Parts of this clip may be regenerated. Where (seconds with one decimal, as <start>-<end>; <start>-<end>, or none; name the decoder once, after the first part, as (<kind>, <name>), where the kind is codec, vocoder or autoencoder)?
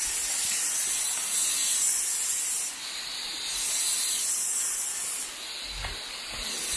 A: none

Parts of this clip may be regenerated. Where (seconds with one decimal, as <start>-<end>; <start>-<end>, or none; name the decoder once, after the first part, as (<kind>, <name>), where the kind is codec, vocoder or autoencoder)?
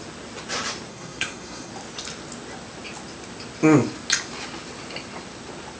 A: 0.9-1.7 (codec, SNAC)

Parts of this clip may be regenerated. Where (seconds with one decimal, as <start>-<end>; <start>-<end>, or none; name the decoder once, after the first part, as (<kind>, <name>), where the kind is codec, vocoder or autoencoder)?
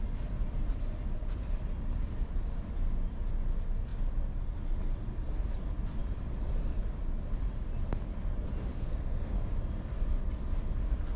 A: 8.7-9.5 (codec, SNAC)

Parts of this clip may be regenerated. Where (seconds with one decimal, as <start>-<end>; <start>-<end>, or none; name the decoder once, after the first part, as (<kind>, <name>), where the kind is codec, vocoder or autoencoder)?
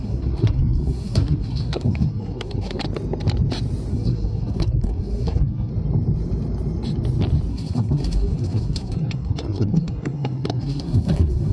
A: 0.0-2.8 (codec, SNAC); 3.9-5.7; 7.5-11.5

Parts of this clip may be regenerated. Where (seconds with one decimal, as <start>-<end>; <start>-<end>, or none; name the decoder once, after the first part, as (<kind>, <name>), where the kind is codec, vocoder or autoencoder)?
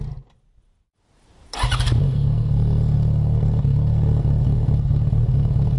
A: 2.0-5.8 (codec, SNAC)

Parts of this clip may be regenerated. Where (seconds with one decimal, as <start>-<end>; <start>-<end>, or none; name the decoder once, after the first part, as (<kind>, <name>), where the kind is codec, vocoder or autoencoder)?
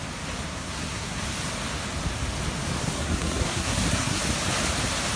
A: 0.5-1.2 (codec, SNAC); 2.8-4.2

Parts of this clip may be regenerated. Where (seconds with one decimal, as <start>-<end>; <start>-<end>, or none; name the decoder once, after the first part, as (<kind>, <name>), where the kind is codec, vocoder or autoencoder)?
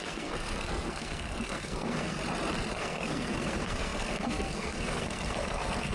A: 0.0-2.2 (codec, SNAC); 2.7-5.9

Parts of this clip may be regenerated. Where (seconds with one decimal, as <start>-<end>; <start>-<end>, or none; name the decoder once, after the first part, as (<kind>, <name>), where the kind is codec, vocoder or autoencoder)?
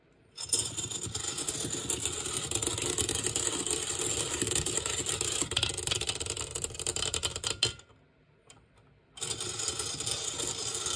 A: none